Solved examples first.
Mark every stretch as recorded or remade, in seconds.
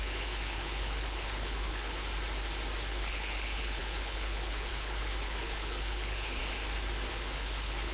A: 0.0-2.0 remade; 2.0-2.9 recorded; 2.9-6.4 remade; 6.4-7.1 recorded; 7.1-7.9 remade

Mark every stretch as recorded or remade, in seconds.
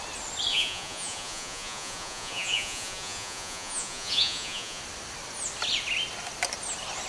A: 0.0-0.5 recorded; 0.5-4.8 remade; 4.8-7.1 recorded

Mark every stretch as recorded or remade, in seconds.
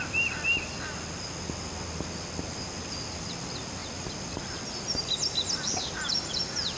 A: 0.0-6.8 recorded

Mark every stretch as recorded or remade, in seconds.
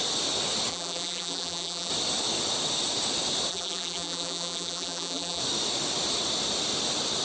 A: 0.0-0.7 recorded; 0.7-1.9 remade; 1.9-3.5 recorded; 3.5-5.4 remade; 5.4-7.2 recorded